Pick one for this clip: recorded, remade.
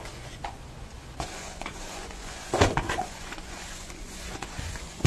remade